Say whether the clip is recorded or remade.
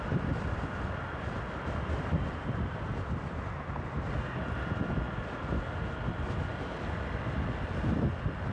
remade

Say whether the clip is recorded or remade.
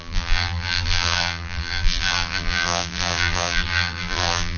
remade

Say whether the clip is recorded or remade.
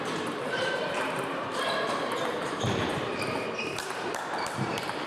remade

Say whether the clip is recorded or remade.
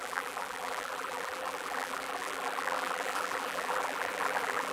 remade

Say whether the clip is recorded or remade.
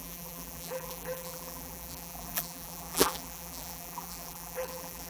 remade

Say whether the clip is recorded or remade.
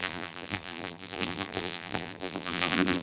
remade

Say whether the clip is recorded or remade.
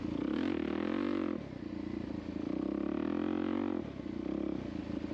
recorded